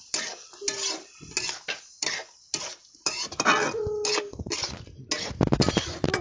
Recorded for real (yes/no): yes